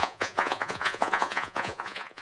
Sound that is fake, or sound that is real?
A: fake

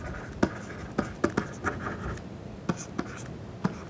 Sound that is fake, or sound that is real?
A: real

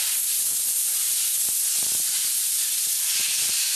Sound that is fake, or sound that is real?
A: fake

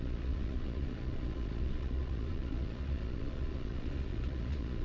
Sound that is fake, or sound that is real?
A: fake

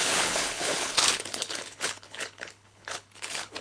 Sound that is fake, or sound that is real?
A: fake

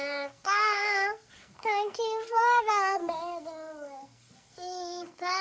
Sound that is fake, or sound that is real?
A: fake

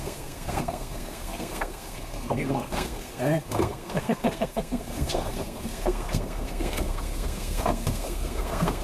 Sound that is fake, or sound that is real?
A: fake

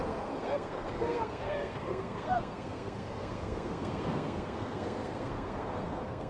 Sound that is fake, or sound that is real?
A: fake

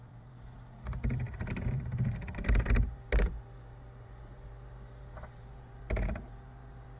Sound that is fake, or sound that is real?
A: fake